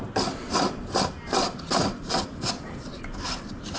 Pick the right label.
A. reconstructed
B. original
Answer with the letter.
B